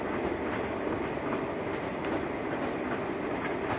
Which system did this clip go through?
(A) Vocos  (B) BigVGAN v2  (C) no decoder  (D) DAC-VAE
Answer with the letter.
C